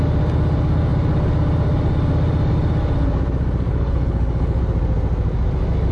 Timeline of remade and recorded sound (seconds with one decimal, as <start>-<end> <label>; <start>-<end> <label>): 0.0-3.7 recorded; 3.7-4.6 remade; 4.6-5.9 recorded